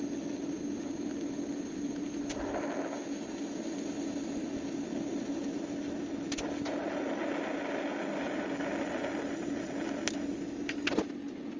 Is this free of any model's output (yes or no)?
yes